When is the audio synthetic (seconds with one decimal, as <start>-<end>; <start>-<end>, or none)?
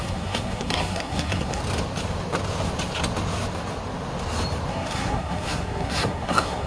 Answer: 0.0-1.6; 4.7-6.7